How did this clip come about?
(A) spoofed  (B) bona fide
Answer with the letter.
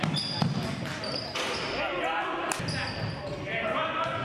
B